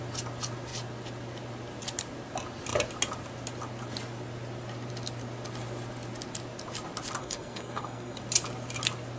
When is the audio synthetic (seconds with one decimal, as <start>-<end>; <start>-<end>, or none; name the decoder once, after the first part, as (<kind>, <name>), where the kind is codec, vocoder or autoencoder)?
7.2-8.2 (codec, SNAC)